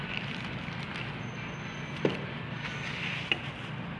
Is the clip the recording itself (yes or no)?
yes